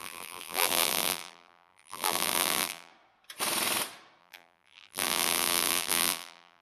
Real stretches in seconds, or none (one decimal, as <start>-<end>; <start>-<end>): 2.9-4.2